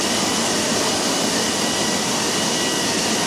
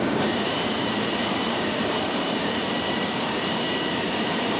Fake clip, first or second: second